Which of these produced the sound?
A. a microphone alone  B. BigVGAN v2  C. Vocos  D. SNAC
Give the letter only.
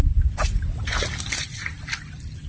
A